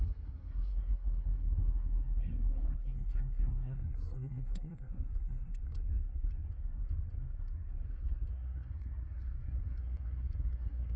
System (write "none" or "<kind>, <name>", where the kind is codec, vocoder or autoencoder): codec, SNAC